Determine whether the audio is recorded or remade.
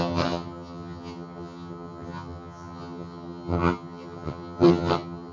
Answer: remade